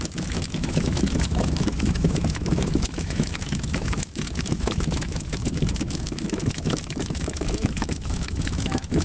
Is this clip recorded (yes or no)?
no